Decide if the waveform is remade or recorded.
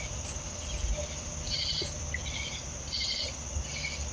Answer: recorded